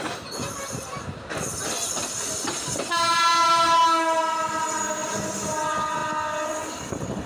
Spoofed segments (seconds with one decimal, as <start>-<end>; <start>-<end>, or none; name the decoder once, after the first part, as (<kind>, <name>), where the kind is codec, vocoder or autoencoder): none

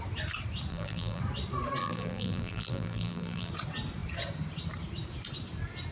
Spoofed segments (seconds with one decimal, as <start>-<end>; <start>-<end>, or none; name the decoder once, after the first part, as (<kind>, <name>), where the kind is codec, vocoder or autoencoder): 0.7-1.2 (vocoder, BigVGAN v2); 1.8-3.5

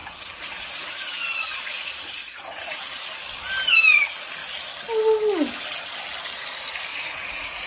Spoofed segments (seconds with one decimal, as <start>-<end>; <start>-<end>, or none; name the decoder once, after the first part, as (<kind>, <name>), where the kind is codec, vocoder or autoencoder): 0.0-2.8 (vocoder, Vocos); 6.9-7.7